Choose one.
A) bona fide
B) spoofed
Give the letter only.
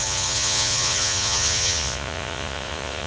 B